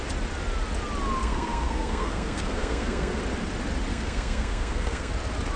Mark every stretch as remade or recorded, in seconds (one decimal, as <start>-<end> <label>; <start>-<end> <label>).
0.0-1.2 recorded; 1.2-3.2 remade; 3.2-3.9 recorded; 3.9-5.1 remade; 5.1-5.6 recorded